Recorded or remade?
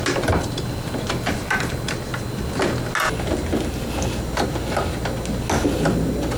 recorded